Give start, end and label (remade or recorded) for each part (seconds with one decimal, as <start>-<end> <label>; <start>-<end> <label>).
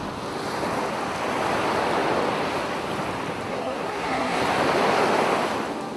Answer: 0.0-3.5 recorded; 3.5-4.4 remade; 4.4-6.0 recorded